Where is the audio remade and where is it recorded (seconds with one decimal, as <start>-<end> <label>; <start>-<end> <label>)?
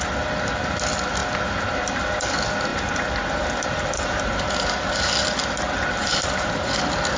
0.0-2.7 recorded; 2.7-5.1 remade; 5.1-6.0 recorded; 6.0-6.8 remade; 6.8-7.2 recorded